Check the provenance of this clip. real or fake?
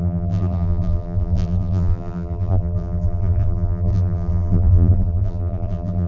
fake